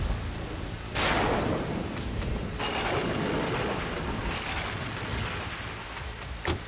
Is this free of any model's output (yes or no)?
yes